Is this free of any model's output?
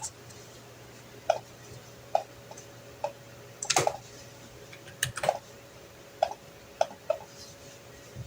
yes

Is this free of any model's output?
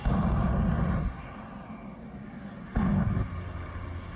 yes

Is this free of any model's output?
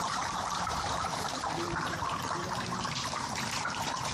no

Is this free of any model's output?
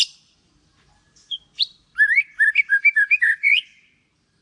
no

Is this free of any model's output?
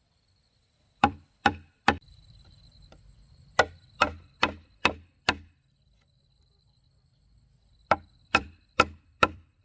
no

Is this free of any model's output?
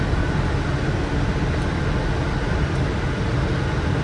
yes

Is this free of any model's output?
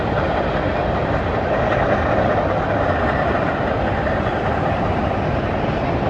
yes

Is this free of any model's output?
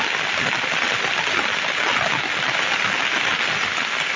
yes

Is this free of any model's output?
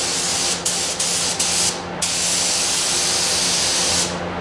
yes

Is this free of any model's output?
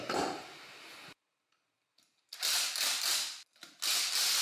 yes